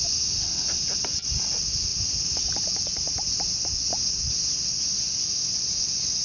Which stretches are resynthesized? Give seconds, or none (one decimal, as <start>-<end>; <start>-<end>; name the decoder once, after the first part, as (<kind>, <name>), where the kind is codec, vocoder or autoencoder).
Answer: none